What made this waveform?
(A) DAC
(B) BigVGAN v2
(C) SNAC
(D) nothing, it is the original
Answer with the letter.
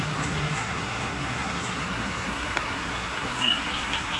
C